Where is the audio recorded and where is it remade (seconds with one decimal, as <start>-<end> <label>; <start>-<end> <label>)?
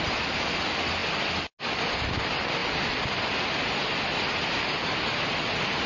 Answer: 0.0-5.9 recorded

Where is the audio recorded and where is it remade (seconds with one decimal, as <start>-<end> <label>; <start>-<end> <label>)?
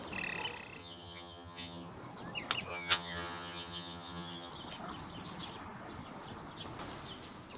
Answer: 0.0-0.8 recorded; 0.8-1.9 remade; 1.9-2.7 recorded; 2.7-4.5 remade; 4.5-7.6 recorded